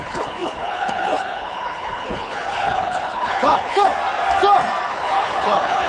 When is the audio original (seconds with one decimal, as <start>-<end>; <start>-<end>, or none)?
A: 3.9-4.9